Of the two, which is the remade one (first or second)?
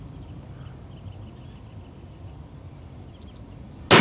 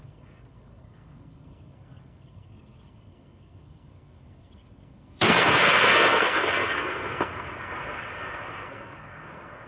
second